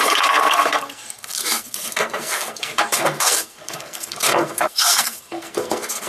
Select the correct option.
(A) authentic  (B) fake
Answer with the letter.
B